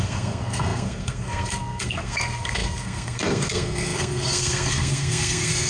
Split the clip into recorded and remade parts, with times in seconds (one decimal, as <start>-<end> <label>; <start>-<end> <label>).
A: 0.0-5.7 remade